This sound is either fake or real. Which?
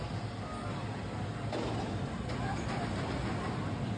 real